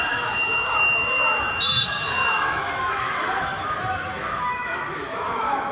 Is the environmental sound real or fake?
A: fake